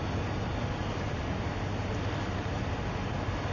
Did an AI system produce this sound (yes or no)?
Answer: no